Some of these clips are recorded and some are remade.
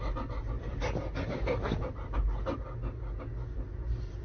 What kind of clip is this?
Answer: recorded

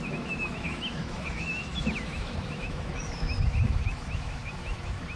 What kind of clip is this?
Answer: remade